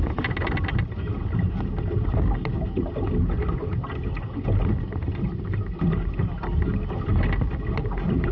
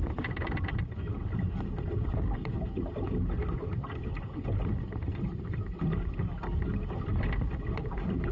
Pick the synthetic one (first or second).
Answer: second